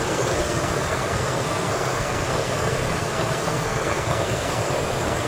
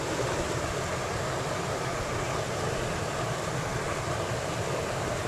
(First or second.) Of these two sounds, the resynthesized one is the first